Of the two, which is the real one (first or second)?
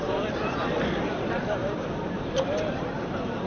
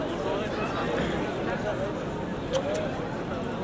second